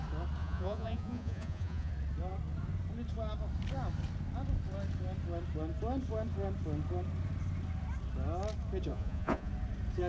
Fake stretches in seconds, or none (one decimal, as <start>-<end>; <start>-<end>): 0.4-1.9; 8.9-9.5